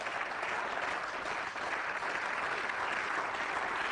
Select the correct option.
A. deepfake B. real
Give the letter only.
B